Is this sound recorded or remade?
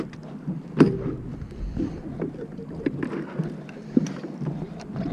recorded